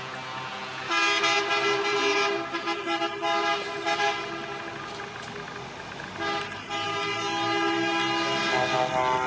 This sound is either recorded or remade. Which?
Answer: recorded